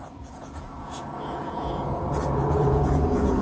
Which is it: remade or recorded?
remade